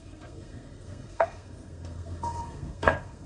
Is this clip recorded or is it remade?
remade